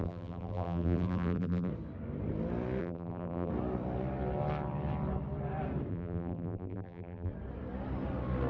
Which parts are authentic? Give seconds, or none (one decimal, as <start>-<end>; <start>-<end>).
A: 1.7-2.8; 3.5-5.9; 7.3-8.5